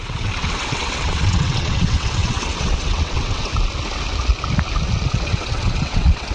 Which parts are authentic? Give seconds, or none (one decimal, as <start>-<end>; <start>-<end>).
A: 3.5-5.1